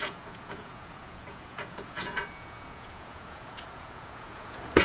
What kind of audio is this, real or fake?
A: fake